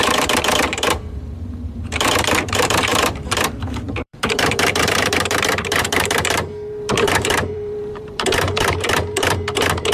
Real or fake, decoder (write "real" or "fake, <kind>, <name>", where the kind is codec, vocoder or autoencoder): fake, vocoder, BigVGAN v2